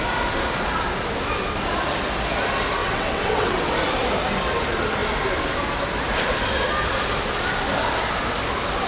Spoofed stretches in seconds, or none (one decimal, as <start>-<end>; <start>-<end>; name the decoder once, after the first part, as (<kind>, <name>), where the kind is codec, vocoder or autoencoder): 2.8-3.7 (vocoder, WaveNeXt)